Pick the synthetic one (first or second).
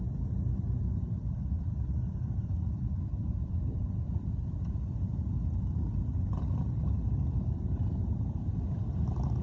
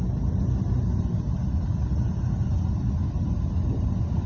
first